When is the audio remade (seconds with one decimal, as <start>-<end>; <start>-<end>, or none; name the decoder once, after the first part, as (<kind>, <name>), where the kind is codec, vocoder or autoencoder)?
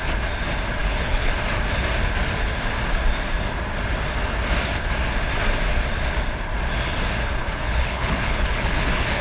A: 0.8-1.3 (codec, HILCodec); 7.4-9.2